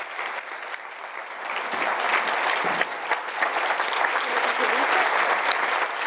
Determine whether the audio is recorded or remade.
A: recorded